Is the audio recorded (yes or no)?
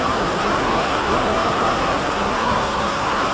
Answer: no